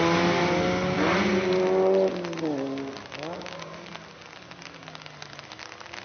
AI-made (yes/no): no